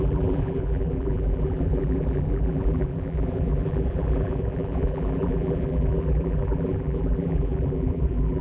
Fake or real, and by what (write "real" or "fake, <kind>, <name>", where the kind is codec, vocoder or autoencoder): fake, vocoder, BigVGAN v2